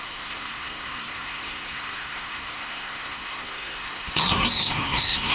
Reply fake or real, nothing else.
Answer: fake